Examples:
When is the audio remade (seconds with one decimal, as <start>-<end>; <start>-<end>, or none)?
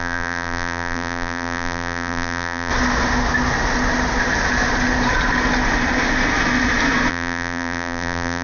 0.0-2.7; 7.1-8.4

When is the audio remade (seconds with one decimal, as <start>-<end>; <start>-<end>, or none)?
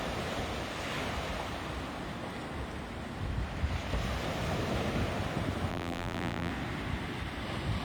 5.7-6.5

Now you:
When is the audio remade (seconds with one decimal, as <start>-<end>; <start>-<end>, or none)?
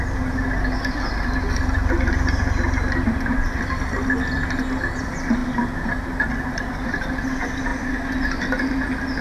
none